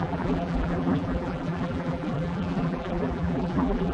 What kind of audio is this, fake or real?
fake